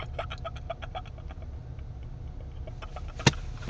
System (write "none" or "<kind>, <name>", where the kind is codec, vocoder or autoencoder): none